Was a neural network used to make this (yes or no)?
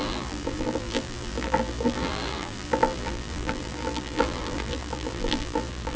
yes